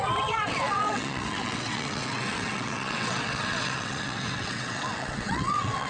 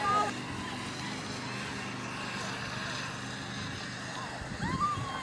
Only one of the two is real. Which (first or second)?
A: second